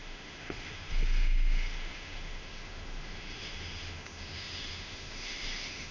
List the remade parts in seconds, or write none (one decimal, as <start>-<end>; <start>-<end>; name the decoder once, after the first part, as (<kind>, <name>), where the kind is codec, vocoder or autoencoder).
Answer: 0.0-5.9 (autoencoder, DAC-VAE)